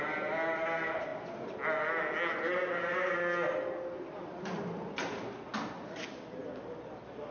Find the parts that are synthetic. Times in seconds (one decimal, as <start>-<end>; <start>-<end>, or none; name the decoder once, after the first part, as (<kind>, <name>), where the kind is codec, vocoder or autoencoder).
none